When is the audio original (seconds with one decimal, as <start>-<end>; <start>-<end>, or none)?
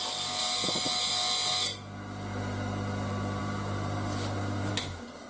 0.0-0.4; 1.1-3.4; 4.7-5.3